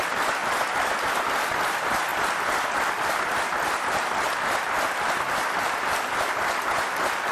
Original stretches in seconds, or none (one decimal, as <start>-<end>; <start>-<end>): 0.0-7.3